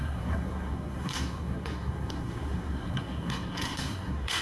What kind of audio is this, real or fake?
fake